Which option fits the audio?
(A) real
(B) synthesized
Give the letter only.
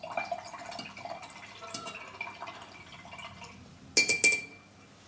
A